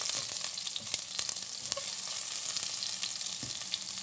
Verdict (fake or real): real